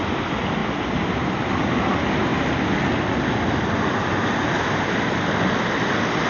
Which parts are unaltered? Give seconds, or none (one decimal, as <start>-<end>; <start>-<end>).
0.0-2.3; 5.7-6.3